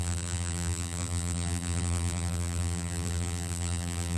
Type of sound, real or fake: fake